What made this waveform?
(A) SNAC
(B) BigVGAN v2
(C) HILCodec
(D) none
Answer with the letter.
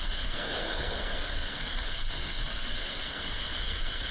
A